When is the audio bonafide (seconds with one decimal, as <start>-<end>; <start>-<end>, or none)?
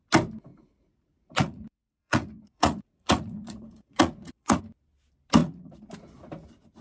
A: 0.0-0.5; 4.6-5.4; 5.9-6.8